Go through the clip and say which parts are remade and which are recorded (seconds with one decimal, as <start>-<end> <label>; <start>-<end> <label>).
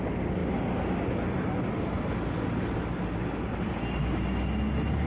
0.0-5.1 recorded